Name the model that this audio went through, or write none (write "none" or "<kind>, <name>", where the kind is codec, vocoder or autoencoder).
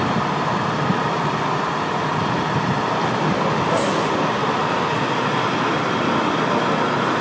vocoder, BigVGAN v2